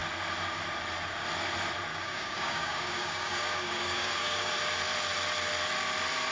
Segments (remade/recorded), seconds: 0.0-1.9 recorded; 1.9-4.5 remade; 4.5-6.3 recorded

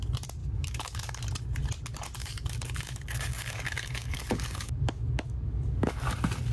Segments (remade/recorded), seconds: 0.0-0.4 recorded; 0.4-1.2 remade; 1.2-2.2 recorded; 2.2-6.1 remade; 6.1-6.5 recorded

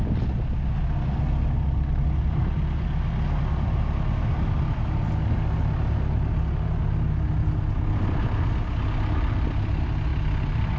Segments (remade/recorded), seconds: 0.0-10.8 recorded

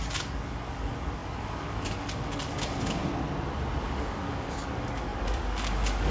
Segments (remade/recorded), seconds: 0.0-3.0 remade; 3.0-3.8 recorded; 3.8-6.1 remade

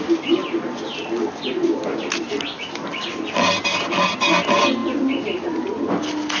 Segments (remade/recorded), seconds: 0.0-6.4 recorded

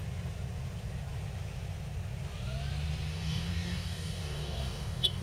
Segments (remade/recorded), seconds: 0.0-3.1 recorded; 3.1-5.2 remade

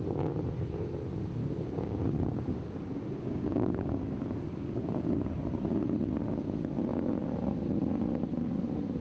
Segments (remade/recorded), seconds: 0.0-1.4 recorded; 1.4-5.3 remade; 5.3-9.0 recorded